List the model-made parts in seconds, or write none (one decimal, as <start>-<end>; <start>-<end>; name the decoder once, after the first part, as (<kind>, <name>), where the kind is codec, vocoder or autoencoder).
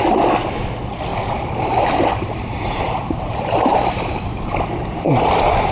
1.1-4.5 (vocoder, BigVGAN v2)